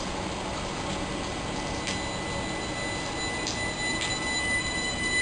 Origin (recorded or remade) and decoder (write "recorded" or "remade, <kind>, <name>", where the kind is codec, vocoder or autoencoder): recorded